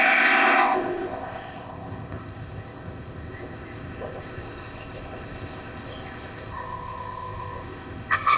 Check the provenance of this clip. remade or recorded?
remade